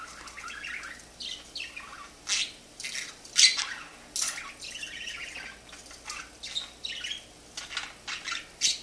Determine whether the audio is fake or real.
real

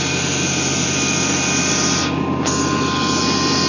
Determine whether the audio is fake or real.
real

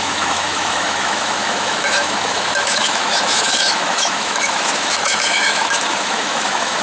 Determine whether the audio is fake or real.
fake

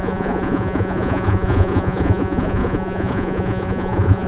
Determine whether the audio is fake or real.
fake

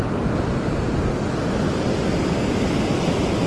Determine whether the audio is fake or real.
real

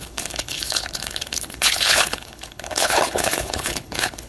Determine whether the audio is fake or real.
fake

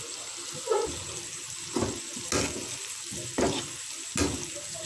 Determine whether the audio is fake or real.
real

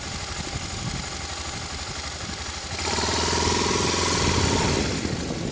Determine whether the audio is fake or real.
real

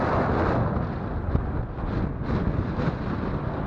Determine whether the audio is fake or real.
real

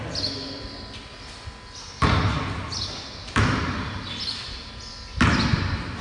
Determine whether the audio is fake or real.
real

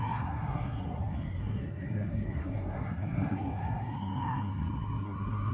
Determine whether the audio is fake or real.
fake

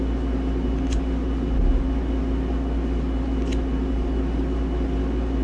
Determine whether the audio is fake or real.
real